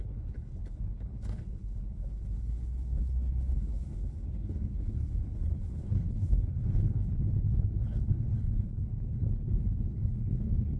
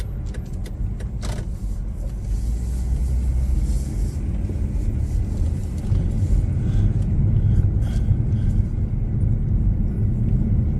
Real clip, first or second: second